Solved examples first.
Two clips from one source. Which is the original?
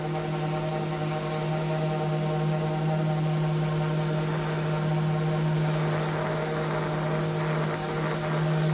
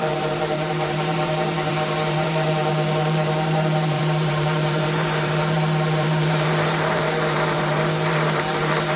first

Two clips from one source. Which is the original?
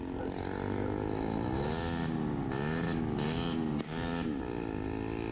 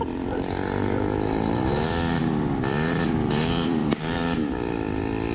first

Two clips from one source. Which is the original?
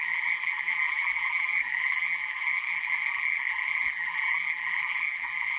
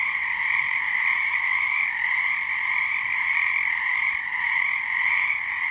second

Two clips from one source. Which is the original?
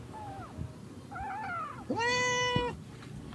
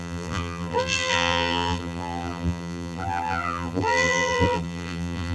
first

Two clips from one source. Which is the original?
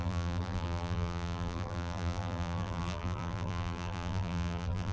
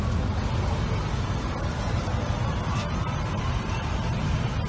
second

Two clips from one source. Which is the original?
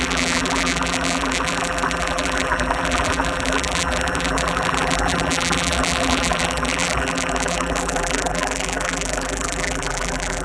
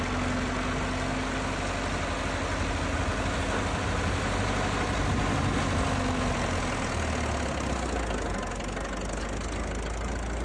second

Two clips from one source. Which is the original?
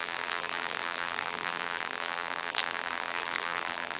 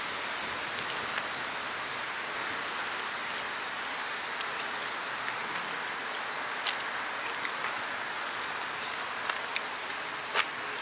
second